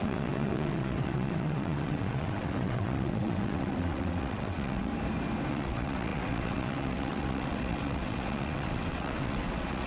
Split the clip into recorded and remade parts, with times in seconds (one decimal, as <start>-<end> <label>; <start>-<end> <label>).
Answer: 0.0-4.9 remade; 4.9-5.5 recorded; 5.5-9.9 remade